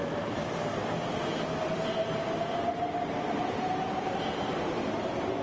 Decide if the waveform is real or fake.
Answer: fake